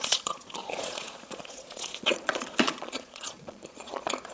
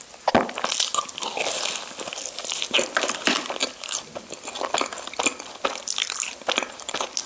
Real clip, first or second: second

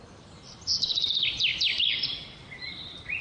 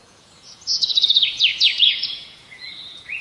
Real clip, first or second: first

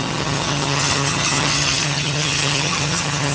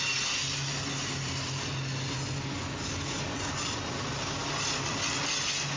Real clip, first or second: second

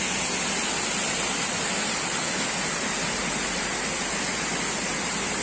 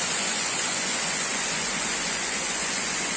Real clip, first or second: first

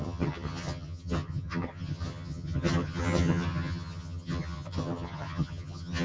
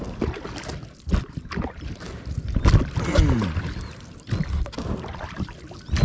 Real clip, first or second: second